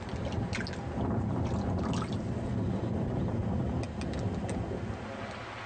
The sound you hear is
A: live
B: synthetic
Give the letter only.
A